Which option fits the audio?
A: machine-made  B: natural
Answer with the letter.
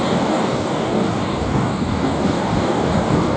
A